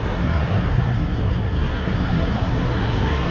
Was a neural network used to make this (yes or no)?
yes